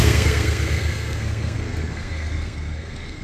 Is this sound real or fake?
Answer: fake